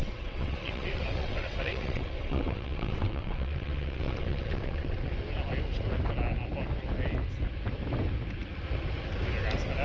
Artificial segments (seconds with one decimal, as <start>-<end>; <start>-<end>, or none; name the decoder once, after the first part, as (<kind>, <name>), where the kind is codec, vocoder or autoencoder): 0.0-5.1 (vocoder, WaveNeXt)